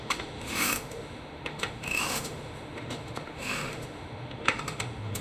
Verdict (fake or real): fake